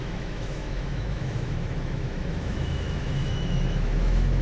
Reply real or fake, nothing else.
fake